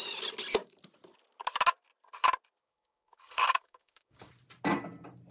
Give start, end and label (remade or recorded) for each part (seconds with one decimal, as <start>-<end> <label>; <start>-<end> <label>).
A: 0.0-2.6 recorded; 2.6-4.3 remade; 4.3-5.3 recorded